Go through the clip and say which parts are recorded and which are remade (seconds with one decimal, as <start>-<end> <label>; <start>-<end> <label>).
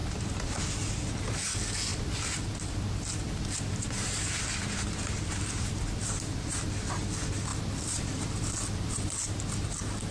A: 0.0-0.6 remade; 0.6-1.9 recorded; 1.9-6.5 remade; 6.5-7.5 recorded; 7.5-9.1 remade; 9.1-10.1 recorded